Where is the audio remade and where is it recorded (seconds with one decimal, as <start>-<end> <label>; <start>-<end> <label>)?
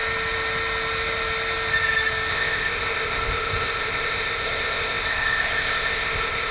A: 0.0-2.3 recorded; 2.3-6.5 remade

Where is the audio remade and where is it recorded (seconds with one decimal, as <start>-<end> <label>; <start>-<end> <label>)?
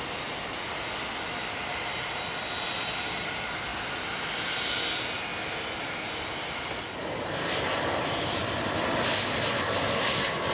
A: 0.0-10.5 recorded